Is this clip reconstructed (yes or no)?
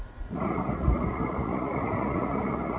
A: yes